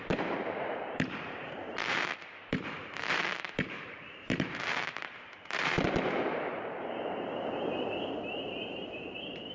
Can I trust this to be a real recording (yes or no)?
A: no